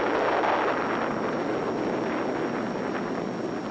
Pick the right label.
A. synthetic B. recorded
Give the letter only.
B